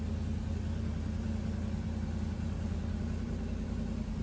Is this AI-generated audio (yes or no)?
no